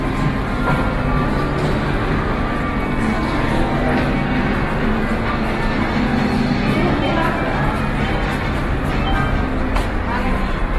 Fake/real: real